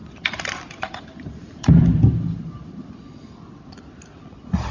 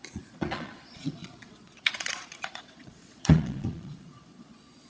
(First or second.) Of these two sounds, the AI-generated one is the second